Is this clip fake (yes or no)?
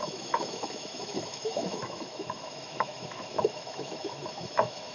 yes